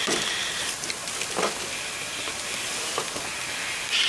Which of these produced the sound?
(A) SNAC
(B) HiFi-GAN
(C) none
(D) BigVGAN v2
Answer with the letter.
C